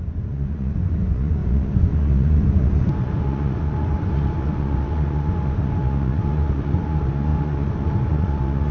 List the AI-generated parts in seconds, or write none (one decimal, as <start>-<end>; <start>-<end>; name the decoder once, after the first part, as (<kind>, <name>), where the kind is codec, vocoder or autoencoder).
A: 0.0-8.7 (vocoder, Vocos)